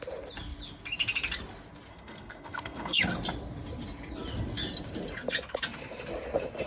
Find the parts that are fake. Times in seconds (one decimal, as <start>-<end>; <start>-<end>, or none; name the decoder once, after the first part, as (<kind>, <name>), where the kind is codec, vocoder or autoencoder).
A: 1.9-3.0 (codec, SNAC)